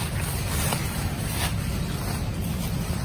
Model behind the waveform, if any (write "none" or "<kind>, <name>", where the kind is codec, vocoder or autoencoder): none